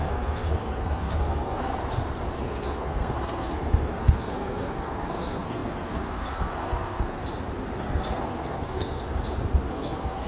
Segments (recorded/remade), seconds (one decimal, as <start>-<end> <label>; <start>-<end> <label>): 0.0-1.7 remade; 1.7-2.4 recorded; 2.4-7.2 remade; 7.2-7.8 recorded; 7.8-9.0 remade; 9.0-9.7 recorded; 9.7-10.3 remade